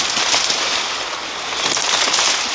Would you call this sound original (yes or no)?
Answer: yes